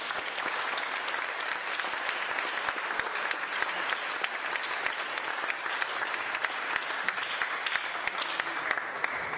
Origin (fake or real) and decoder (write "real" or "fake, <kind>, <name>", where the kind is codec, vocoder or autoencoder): real